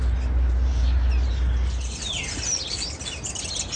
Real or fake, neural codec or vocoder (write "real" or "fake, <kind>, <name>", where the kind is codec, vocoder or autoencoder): real